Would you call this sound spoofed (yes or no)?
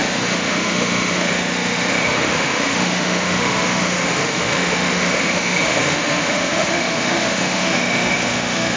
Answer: yes